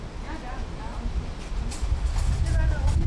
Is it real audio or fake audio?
real